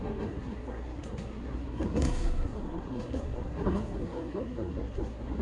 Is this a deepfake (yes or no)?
yes